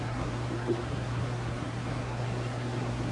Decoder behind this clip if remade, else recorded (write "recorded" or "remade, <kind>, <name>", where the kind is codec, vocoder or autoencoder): remade, codec, SNAC